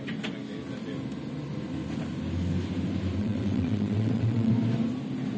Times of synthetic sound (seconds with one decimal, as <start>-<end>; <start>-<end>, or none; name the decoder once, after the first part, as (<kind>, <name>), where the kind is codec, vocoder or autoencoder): 3.2-4.5 (vocoder, WaveNeXt)